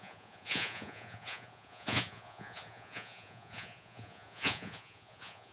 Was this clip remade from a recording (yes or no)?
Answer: yes